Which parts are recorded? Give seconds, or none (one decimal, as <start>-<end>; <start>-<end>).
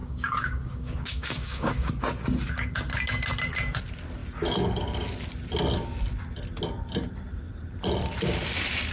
1.9-8.9